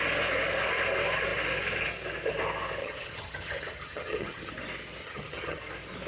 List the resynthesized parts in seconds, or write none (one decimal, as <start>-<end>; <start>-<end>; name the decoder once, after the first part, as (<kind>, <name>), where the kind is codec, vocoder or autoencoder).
2.8-4.5 (vocoder, HiFi-GAN); 5.0-5.6